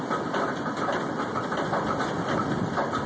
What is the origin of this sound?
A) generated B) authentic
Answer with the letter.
A